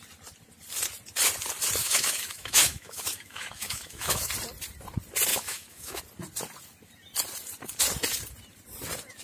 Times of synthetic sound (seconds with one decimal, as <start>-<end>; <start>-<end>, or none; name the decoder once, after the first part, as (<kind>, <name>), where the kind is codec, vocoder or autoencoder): 1.8-4.3 (autoencoder, DAC-VAE); 5.3-6.0